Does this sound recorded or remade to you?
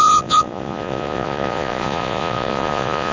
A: remade